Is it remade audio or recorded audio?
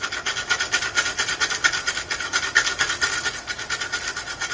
recorded